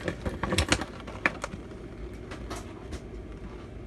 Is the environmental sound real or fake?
real